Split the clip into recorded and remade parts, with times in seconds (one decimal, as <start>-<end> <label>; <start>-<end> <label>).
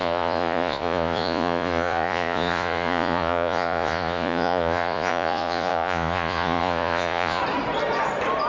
0.0-7.4 remade; 7.4-8.5 recorded